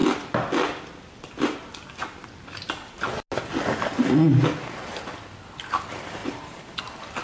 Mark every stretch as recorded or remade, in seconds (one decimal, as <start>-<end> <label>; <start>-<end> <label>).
0.0-6.2 recorded; 6.2-6.8 remade; 6.8-7.2 recorded